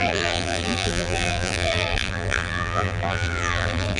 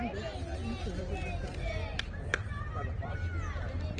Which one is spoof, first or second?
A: first